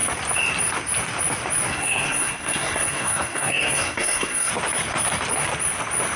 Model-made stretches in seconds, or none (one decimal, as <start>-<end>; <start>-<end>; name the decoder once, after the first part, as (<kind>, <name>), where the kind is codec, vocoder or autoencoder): 1.7-4.5 (codec, SNAC)